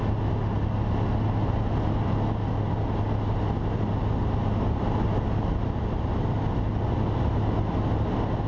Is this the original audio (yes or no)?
yes